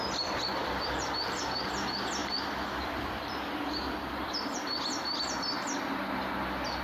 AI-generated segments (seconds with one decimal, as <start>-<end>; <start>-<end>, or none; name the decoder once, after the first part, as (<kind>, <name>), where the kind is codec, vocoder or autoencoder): 0.6-1.6 (vocoder, BigVGAN v2); 2.2-5.8